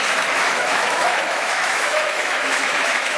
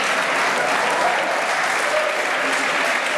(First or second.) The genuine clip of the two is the second